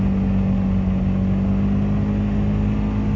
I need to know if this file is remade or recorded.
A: recorded